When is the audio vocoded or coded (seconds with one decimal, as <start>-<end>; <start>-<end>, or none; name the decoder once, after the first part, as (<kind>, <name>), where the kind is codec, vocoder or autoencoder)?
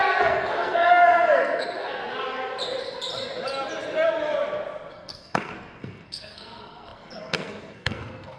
0.0-2.0 (codec, SNAC); 4.9-8.4